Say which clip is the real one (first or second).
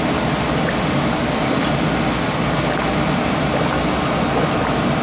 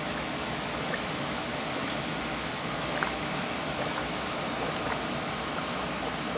first